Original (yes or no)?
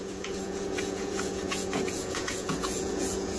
no